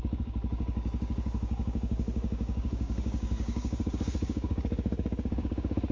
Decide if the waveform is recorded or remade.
remade